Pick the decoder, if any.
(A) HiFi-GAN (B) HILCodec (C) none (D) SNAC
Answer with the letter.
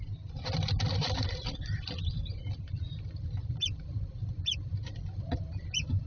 C